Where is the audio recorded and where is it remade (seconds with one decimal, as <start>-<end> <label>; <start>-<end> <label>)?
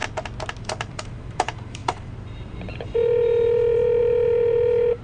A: 0.0-0.6 recorded; 0.6-5.0 remade